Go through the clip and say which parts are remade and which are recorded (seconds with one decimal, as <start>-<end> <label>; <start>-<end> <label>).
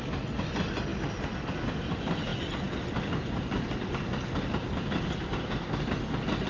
0.0-6.5 recorded